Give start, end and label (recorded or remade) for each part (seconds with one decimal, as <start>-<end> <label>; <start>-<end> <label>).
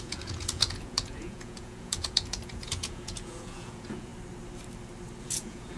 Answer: 0.0-4.1 remade; 4.1-5.2 recorded; 5.2-5.8 remade